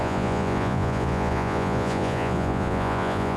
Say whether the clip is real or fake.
fake